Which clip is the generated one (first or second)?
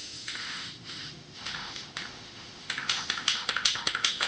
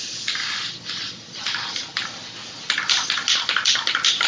first